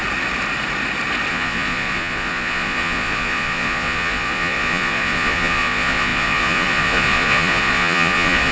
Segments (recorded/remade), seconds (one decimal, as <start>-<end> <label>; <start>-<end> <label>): 0.0-1.3 recorded; 1.3-8.5 remade